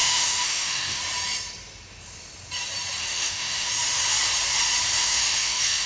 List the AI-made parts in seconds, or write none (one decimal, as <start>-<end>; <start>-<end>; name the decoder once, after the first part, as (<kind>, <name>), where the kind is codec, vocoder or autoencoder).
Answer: 0.0-1.0 (autoencoder, DAC-VAE); 3.0-3.7; 5.0-5.9